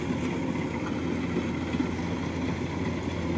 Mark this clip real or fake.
real